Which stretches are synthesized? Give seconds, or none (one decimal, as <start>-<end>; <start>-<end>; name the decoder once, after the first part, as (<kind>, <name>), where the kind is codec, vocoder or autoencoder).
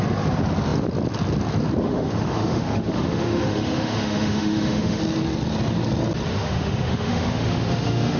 1.8-5.0 (autoencoder, DAC-VAE); 6.3-8.2